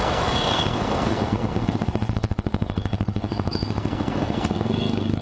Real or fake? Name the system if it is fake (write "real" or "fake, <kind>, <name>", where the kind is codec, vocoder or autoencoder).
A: fake, codec, SNAC